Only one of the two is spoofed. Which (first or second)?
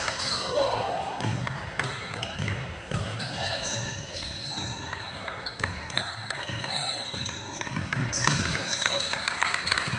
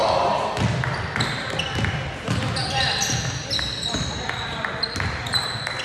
first